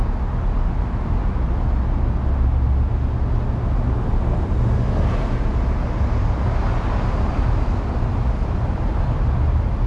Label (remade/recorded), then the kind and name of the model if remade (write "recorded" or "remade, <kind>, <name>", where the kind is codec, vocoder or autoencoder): recorded